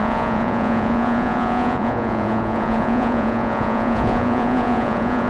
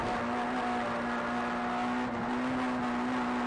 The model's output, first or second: first